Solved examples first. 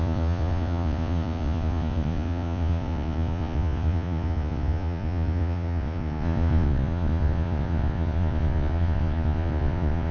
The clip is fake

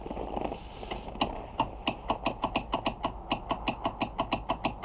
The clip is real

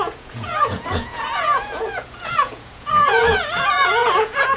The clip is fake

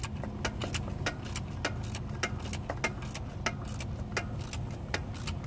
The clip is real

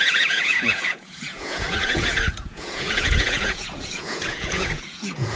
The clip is fake